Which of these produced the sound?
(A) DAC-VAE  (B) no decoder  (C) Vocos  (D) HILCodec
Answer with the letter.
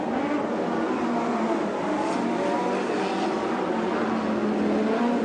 B